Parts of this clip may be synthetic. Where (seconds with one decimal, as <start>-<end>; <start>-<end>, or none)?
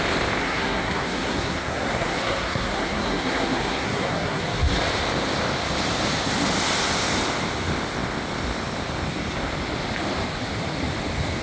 0.4-4.4